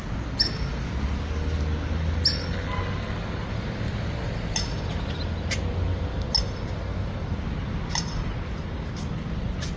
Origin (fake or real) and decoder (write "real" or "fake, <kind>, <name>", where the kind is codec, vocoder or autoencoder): real